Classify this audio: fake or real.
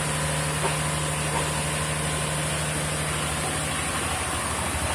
real